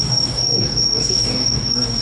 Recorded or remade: remade